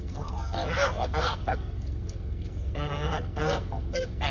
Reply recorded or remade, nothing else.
remade